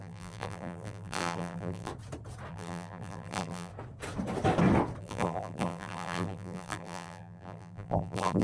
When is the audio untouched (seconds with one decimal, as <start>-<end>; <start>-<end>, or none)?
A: 1.9-2.5; 3.7-5.0